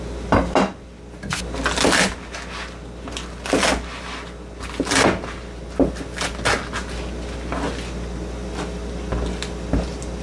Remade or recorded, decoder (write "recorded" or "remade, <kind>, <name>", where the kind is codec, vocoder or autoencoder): recorded